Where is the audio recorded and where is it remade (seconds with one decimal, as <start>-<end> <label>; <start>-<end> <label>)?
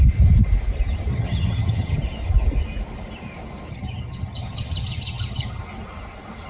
0.0-1.1 recorded; 1.1-2.0 remade; 2.0-3.7 recorded; 3.7-5.6 remade; 5.6-6.5 recorded